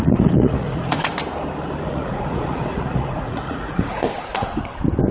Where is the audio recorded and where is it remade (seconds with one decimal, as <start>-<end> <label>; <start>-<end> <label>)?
0.0-1.1 remade; 1.1-1.8 recorded; 1.8-4.0 remade; 4.0-5.1 recorded